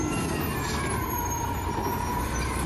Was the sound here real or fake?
real